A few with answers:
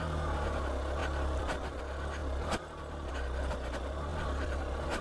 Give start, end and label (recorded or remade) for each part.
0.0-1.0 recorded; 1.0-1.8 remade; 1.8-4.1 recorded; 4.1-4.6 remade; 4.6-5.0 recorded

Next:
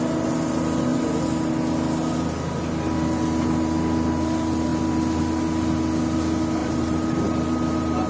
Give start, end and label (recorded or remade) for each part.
0.0-6.6 recorded; 6.6-7.2 remade; 7.2-8.1 recorded

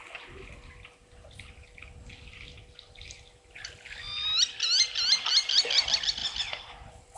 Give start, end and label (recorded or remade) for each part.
0.0-6.2 recorded; 6.2-7.2 remade